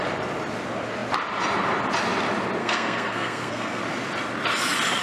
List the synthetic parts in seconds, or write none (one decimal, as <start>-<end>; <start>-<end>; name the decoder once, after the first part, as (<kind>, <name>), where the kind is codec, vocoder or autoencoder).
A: 2.6-3.8 (codec, SNAC)